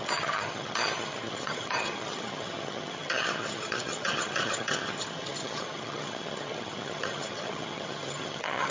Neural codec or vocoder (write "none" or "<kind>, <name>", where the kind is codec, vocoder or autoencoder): vocoder, HiFi-GAN